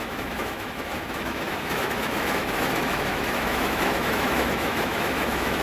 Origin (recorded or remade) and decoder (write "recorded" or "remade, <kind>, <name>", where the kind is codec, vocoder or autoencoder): remade, autoencoder, DAC-VAE